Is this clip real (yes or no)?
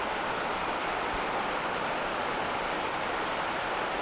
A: yes